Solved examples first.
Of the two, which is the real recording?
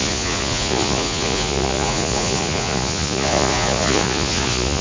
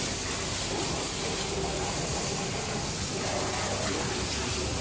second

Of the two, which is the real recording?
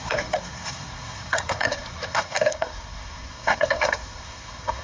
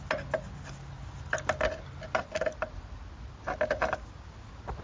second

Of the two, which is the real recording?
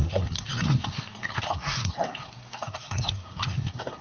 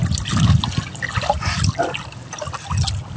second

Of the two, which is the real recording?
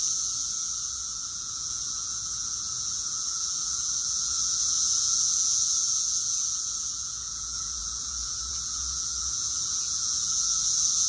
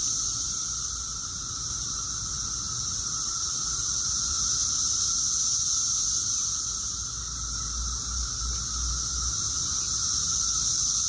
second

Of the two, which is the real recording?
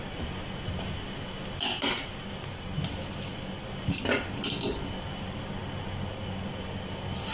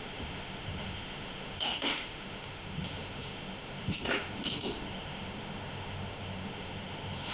first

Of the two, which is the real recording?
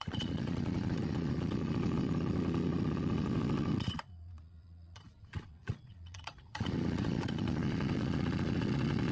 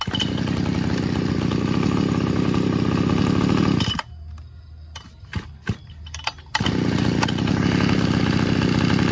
second